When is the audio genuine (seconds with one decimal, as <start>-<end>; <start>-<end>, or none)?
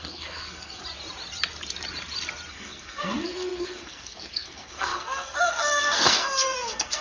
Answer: 0.8-2.5